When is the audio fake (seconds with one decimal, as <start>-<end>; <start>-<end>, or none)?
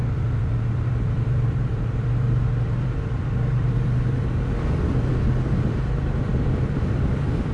0.0-7.5